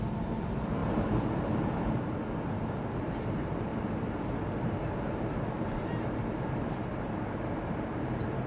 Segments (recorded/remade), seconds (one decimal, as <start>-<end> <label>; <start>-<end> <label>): 0.0-3.7 remade; 3.7-6.1 recorded; 6.1-8.5 remade